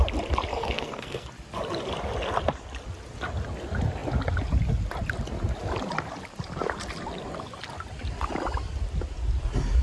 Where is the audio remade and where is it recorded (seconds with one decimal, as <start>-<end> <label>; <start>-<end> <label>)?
0.0-0.5 recorded; 0.5-1.3 remade; 1.3-9.8 recorded